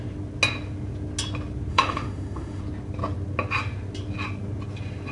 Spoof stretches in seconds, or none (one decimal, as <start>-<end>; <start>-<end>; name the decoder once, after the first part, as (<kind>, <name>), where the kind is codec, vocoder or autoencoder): 1.7-2.6 (autoencoder, DAC-VAE)